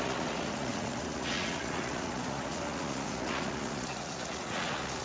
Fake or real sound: fake